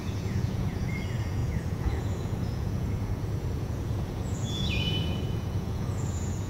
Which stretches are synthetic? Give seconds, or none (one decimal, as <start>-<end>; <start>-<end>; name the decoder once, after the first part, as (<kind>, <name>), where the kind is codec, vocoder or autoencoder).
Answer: 0.0-6.5 (vocoder, Vocos)